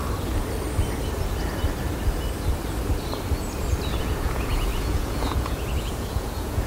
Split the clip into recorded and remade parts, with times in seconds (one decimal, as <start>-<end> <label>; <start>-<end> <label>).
0.0-4.0 recorded; 4.0-6.7 remade